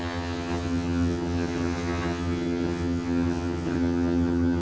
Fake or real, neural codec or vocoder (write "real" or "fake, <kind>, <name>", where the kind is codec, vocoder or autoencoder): fake, vocoder, HiFi-GAN